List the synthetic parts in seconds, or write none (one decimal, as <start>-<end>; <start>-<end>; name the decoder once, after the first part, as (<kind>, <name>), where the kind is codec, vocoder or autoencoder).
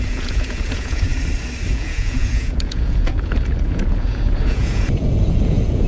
0.0-1.1 (vocoder, Vocos); 1.7-5.9